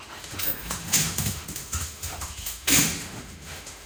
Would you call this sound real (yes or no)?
no